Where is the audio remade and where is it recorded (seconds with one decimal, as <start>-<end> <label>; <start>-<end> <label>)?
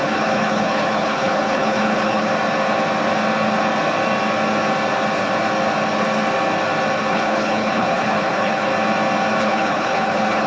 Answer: 0.0-2.3 remade; 2.3-7.1 recorded; 7.1-8.7 remade; 8.7-9.4 recorded; 9.4-10.5 remade